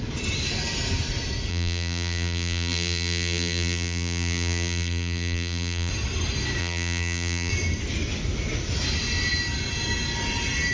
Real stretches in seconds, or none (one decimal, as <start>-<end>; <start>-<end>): 0.0-1.5; 5.9-6.6; 7.5-10.7